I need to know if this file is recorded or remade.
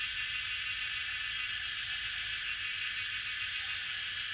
recorded